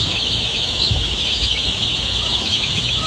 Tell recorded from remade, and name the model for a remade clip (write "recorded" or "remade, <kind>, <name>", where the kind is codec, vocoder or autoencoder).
remade, autoencoder, DAC-VAE